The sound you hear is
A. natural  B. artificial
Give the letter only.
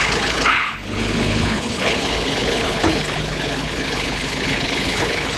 B